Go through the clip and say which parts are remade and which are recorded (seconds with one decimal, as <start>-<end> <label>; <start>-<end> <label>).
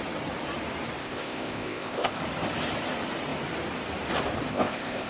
0.0-1.0 recorded; 1.0-2.2 remade; 2.2-4.5 recorded; 4.5-5.1 remade